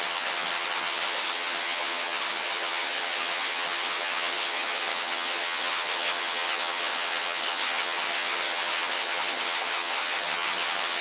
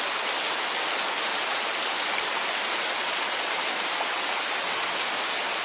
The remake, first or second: first